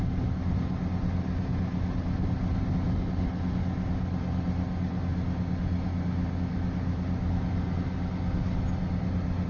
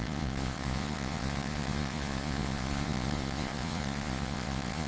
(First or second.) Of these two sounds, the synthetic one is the second